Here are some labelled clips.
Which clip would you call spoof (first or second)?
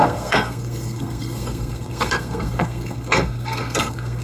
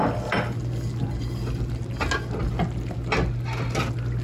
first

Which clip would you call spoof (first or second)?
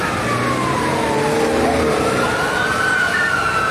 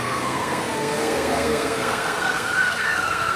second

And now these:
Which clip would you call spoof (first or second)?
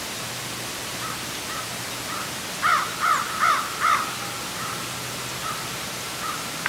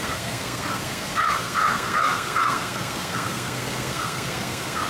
second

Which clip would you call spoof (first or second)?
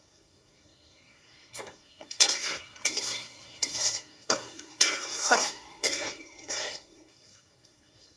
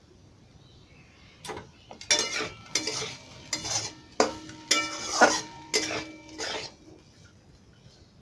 first